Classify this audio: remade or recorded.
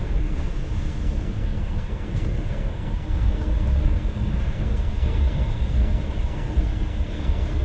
remade